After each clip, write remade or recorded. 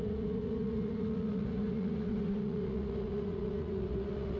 remade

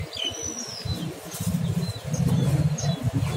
recorded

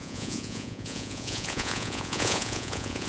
remade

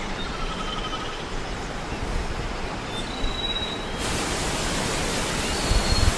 recorded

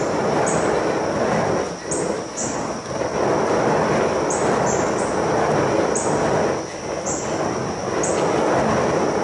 recorded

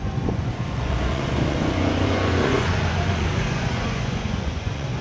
remade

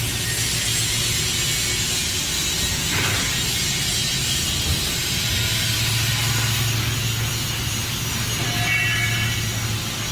recorded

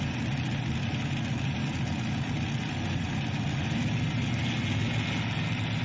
recorded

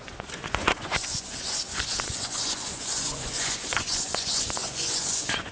remade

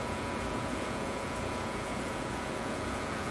remade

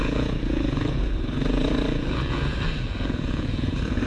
remade